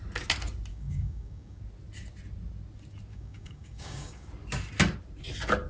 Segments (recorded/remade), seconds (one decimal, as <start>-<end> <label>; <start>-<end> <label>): 0.0-0.7 recorded; 0.7-1.6 remade; 1.6-3.1 recorded; 3.1-4.3 remade; 4.3-5.7 recorded